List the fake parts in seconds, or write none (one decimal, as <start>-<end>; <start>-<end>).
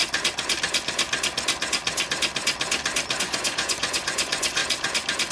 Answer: 3.2-4.6